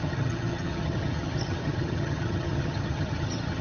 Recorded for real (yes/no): no